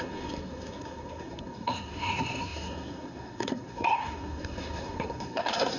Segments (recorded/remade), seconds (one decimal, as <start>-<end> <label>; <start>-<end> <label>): 0.0-5.8 remade